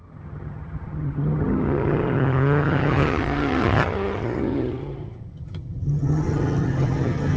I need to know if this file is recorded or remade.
remade